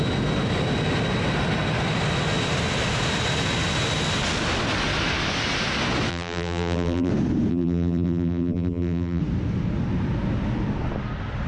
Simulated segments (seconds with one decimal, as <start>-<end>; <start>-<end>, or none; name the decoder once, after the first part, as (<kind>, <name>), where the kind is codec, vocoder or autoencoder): 6.1-7.1 (vocoder, BigVGAN v2); 7.5-9.2